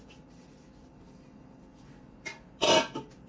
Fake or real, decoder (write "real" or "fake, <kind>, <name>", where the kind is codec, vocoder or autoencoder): fake, vocoder, BigVGAN v2